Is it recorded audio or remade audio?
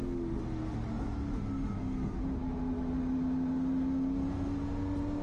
recorded